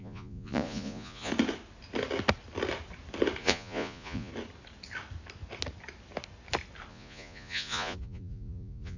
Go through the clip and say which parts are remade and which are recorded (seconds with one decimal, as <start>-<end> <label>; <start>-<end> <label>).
0.0-1.3 remade; 1.3-3.4 recorded; 3.4-4.3 remade; 4.3-6.9 recorded; 6.9-9.0 remade